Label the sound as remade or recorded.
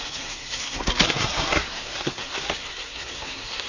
remade